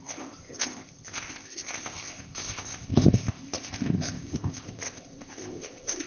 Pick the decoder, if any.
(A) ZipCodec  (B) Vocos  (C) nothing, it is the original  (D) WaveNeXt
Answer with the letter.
A